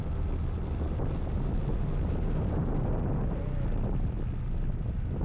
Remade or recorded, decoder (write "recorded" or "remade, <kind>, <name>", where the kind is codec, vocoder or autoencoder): recorded